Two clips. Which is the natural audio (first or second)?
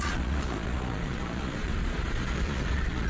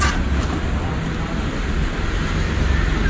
second